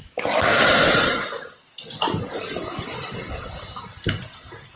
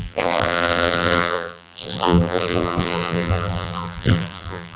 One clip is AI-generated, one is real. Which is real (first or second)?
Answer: first